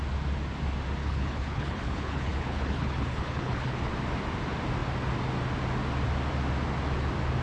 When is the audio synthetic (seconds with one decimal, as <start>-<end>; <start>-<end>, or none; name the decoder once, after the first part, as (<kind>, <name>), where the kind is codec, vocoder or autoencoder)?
1.0-3.9 (codec, HILCodec)